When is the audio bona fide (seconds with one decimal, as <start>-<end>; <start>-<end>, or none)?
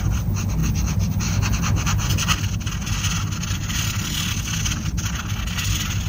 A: 0.0-6.1